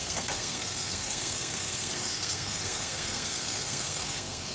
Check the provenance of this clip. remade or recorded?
remade